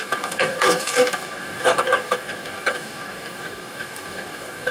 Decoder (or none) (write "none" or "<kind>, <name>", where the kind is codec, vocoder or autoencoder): codec, DAC